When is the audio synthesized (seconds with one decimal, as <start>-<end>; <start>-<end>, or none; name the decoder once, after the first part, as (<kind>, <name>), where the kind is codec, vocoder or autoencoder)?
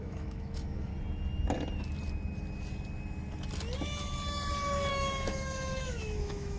0.0-0.9 (autoencoder, DAC-VAE); 4.9-6.6